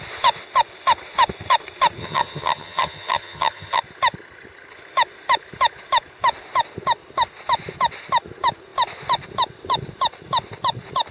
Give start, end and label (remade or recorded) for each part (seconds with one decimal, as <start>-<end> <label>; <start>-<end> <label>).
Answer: 0.0-2.0 recorded; 2.0-3.8 remade; 3.8-11.1 recorded